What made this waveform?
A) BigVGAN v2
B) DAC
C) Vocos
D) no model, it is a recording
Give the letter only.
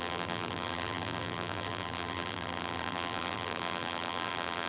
A